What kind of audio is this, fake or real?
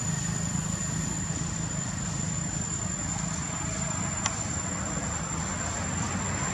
real